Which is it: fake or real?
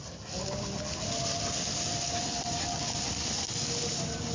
real